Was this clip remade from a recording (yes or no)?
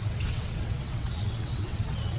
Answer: yes